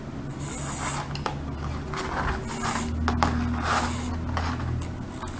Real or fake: real